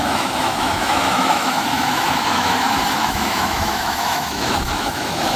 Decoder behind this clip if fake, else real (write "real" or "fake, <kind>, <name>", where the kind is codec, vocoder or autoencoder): fake, autoencoder, DAC-VAE